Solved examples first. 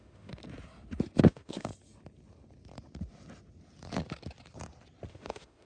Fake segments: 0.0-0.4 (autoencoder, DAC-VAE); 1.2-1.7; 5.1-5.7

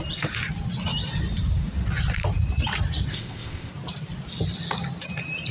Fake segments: 3.1-3.7 (codec, ZipCodec)

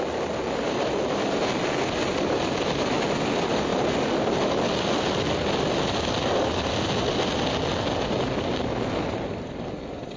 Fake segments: none

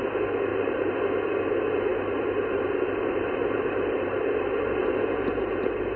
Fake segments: 0.5-1.0 (vocoder, BigVGAN v2); 1.9-5.5

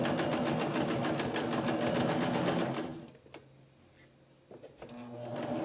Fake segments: none